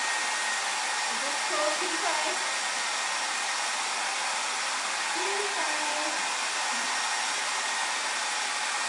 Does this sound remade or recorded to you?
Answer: recorded